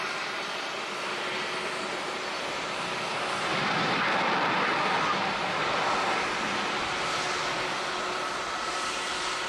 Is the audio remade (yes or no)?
no